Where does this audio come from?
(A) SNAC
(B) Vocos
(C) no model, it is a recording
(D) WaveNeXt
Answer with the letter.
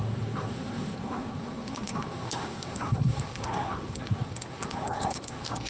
A